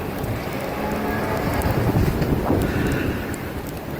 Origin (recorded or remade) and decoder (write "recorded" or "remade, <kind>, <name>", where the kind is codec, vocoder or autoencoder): recorded